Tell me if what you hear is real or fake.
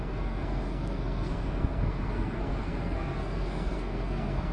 fake